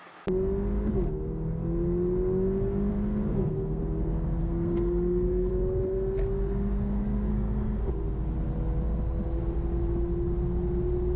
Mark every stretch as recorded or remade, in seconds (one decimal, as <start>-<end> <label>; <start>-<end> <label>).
0.0-3.3 recorded; 3.3-3.8 remade; 3.8-4.4 recorded; 4.4-5.5 remade; 5.5-7.3 recorded; 7.3-7.9 remade; 7.9-11.2 recorded